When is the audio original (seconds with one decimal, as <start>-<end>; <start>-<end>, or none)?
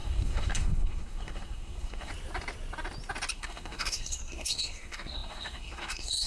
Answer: 2.1-3.3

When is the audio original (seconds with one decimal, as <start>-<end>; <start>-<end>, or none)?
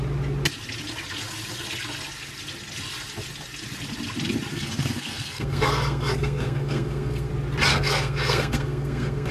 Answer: 0.0-4.5; 7.3-7.7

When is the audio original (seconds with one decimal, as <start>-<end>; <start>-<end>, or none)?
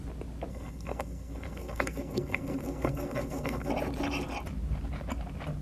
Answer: 0.0-0.5; 3.7-5.6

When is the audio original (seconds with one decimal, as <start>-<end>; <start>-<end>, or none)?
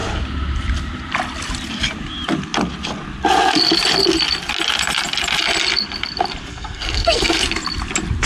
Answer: 0.0-6.5; 7.4-8.3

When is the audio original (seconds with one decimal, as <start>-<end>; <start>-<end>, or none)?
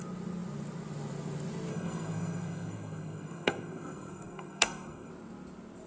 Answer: 0.0-1.7; 5.1-5.9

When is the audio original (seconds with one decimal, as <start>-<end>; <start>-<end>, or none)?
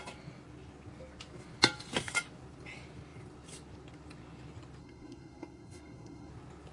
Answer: 0.0-4.8; 6.3-6.7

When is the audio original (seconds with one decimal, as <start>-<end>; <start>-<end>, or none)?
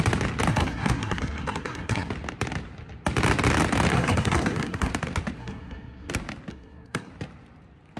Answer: 0.0-0.5; 2.1-3.9; 4.9-5.4; 6.1-6.5; 7.1-8.0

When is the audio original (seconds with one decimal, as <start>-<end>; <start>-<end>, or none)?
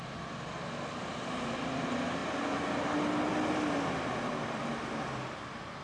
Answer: 0.0-5.8